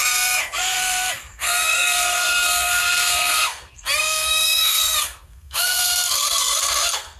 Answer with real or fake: fake